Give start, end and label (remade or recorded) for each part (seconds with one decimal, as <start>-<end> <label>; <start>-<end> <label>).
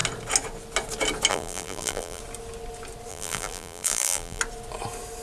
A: 0.0-1.3 recorded; 1.3-2.2 remade; 2.2-3.1 recorded; 3.1-4.4 remade; 4.4-5.2 recorded